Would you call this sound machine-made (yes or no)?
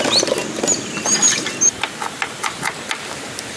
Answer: no